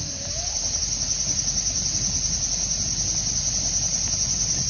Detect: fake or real real